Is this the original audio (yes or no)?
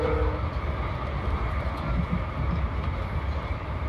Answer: yes